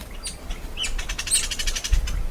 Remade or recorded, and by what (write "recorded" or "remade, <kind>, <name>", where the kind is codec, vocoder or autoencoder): recorded